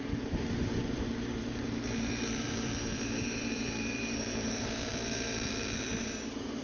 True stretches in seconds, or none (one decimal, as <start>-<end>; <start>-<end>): none